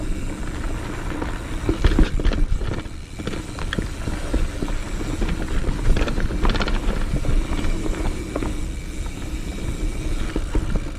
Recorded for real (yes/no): yes